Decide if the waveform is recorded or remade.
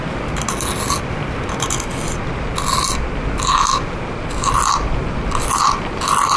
recorded